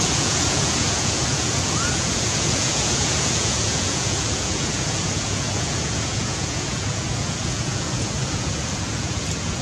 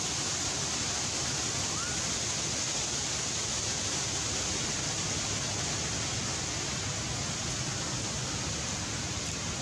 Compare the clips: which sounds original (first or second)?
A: second